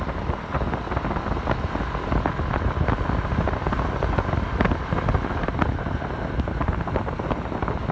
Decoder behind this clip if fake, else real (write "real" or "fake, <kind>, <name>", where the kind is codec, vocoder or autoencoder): real